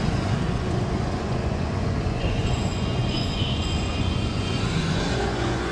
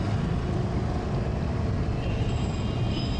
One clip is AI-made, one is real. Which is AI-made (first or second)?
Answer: first